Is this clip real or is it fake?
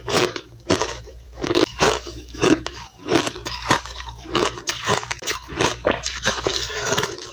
fake